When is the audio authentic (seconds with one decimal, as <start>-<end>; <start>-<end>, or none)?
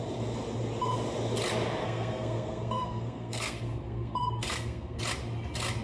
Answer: 0.0-1.8; 5.0-5.8